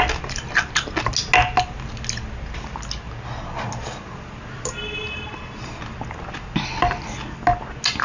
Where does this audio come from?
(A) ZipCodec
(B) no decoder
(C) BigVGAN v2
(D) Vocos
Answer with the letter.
B